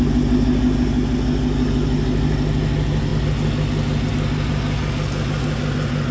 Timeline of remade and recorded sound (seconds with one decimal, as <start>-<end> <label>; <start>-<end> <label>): 0.0-6.1 recorded